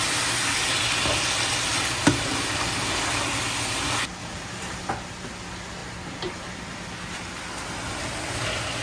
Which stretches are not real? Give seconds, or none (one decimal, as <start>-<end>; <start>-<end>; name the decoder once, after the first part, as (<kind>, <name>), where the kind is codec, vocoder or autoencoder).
1.7-3.0 (vocoder, BigVGAN v2); 4.2-4.9